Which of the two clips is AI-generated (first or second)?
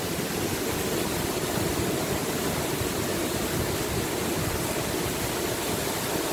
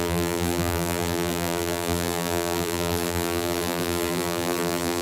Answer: second